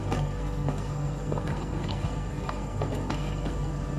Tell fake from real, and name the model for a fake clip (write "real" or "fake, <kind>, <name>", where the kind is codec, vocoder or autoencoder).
fake, codec, SNAC